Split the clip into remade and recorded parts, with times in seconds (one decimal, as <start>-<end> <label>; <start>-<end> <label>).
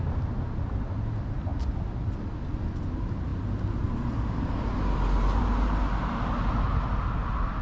0.0-7.6 recorded